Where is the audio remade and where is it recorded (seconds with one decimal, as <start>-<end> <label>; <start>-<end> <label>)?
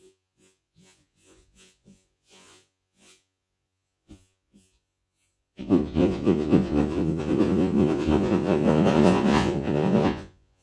0.0-10.6 remade